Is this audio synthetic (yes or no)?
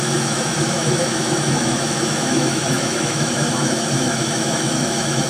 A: yes